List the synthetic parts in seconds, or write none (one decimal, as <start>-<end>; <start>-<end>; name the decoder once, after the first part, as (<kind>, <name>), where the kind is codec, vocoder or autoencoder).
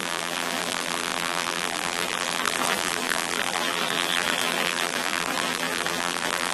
0.0-6.5 (vocoder, BigVGAN v2)